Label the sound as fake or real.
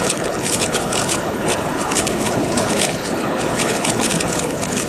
fake